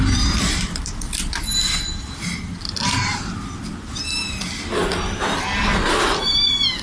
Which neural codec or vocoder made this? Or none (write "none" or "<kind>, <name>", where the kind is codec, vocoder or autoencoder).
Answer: none